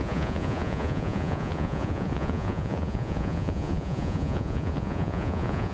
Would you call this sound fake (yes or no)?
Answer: yes